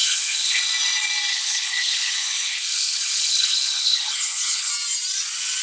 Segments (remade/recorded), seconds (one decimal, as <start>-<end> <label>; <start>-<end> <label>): 0.0-0.6 remade; 0.6-1.3 recorded; 1.3-4.7 remade; 4.7-5.6 recorded